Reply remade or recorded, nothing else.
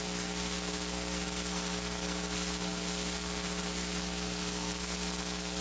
remade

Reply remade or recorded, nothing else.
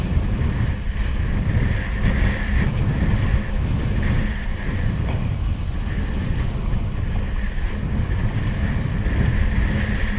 recorded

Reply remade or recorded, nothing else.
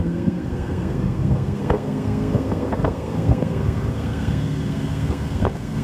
remade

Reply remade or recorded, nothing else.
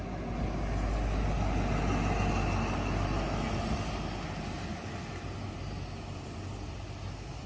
recorded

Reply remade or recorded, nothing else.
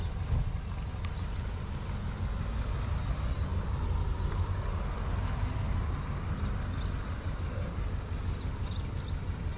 recorded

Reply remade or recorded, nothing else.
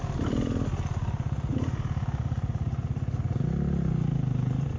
recorded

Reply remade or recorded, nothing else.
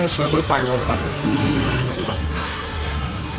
remade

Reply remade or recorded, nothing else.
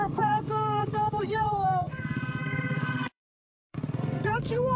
remade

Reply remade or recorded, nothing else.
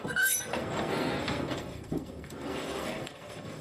remade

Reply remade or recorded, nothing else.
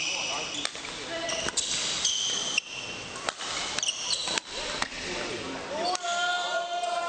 recorded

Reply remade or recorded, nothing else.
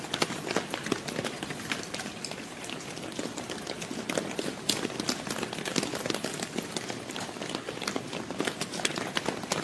recorded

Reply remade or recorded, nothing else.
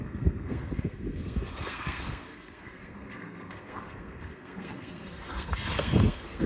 remade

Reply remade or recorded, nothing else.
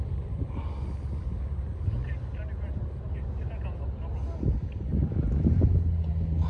recorded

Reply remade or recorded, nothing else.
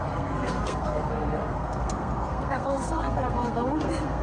remade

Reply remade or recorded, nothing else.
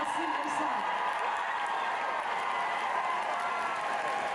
recorded